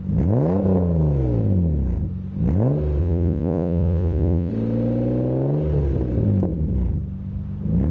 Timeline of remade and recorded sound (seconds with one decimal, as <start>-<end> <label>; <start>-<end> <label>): 0.0-3.0 recorded; 3.0-4.5 remade; 4.5-7.9 recorded